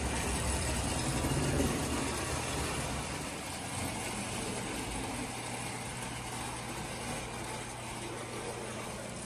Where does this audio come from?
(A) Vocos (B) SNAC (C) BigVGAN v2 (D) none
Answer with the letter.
D